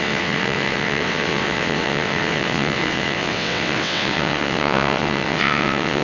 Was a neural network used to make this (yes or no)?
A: yes